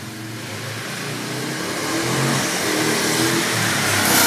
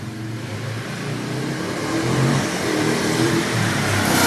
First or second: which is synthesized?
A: second